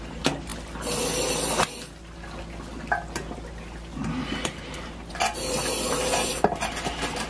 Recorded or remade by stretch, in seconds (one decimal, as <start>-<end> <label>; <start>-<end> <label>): 0.0-7.3 recorded